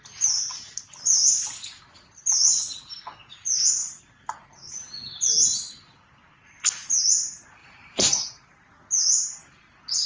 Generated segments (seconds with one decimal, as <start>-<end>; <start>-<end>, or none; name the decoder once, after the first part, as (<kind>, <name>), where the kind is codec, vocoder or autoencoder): 7.6-8.5 (vocoder, BigVGAN v2)